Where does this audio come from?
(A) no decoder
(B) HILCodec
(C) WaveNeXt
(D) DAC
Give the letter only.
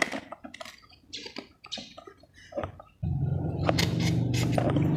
A